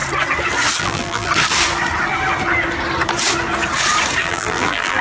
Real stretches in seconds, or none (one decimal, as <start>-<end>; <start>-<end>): 0.0-0.8; 1.3-4.2